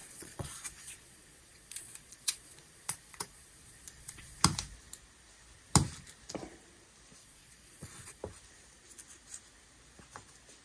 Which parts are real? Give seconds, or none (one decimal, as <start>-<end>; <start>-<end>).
4.4-7.2; 8.2-10.6